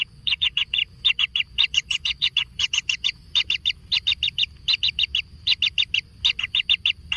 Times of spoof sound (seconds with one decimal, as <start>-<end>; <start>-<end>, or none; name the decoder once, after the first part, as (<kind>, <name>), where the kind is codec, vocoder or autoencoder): 0.0-0.8 (vocoder, Vocos); 1.5-3.2